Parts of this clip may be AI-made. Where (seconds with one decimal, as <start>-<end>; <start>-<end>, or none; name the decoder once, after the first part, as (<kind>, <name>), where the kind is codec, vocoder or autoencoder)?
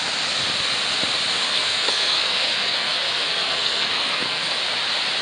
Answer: 1.5-4.6 (codec, SNAC)